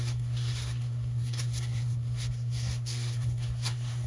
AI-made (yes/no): yes